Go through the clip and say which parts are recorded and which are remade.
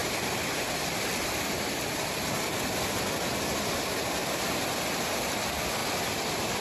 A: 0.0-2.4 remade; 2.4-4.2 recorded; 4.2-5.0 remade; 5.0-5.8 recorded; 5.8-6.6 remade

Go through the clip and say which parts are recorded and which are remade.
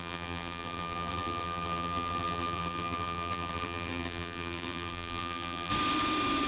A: 0.0-5.7 remade; 5.7-6.5 recorded